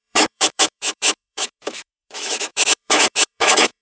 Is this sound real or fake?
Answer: fake